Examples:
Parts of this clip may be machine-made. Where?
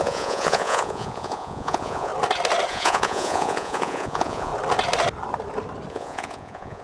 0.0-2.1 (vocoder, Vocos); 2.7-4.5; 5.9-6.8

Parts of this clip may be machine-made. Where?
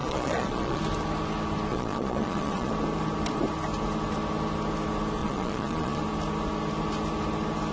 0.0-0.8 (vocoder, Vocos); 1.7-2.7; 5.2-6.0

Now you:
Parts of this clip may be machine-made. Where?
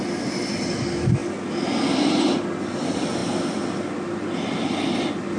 none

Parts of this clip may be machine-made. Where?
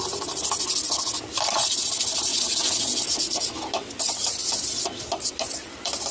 2.3-3.0 (vocoder, Vocos)